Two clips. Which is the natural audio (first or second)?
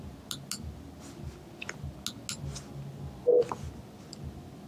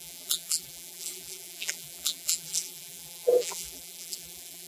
first